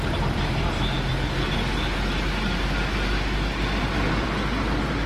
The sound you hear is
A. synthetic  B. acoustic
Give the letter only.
B